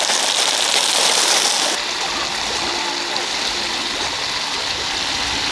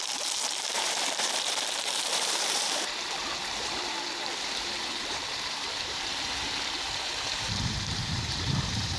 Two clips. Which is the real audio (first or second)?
first